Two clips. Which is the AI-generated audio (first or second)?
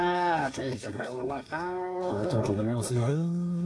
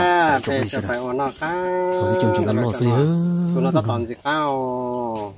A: first